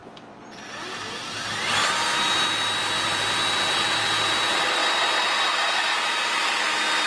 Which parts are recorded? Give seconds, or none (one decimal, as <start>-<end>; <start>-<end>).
0.0-7.1